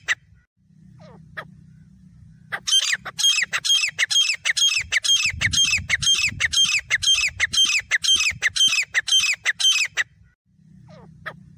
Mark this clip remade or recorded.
recorded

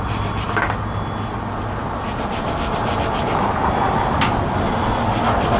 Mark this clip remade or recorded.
recorded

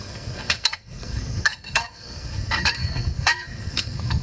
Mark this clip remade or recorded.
remade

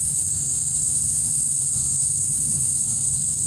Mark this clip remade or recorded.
remade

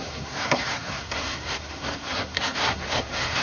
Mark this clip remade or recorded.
remade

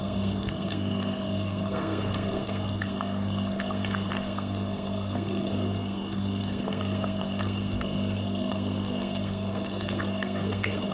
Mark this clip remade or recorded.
remade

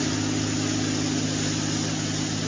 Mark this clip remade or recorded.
recorded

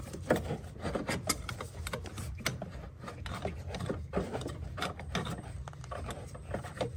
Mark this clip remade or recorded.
recorded